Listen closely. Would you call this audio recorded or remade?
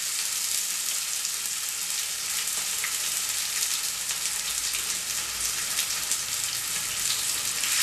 recorded